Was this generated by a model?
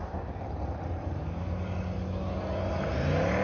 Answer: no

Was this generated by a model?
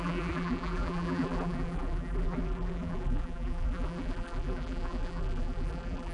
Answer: yes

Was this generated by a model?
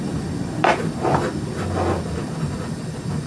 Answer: no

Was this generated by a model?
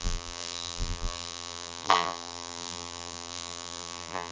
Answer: yes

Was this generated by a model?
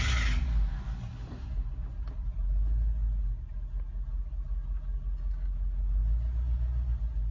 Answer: no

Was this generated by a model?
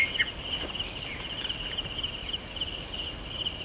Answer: yes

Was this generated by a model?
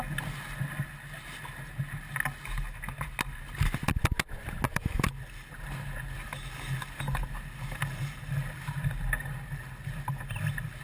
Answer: no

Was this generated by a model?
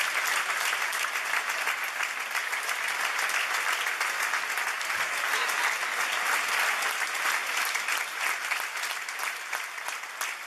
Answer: no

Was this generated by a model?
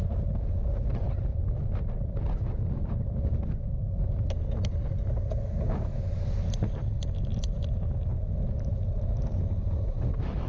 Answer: no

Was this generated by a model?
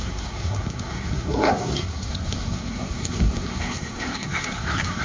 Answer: yes